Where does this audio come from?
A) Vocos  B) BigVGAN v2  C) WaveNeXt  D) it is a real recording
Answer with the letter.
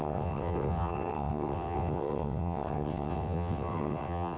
C